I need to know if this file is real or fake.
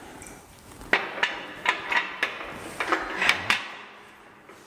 real